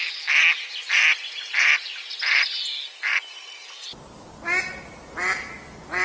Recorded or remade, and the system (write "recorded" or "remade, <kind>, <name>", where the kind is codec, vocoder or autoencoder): recorded